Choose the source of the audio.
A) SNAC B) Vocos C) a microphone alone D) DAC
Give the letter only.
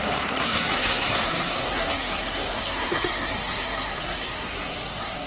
A